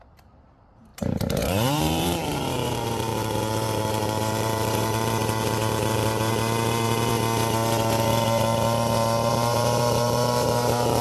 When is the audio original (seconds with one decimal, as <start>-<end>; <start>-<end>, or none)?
7.1-9.3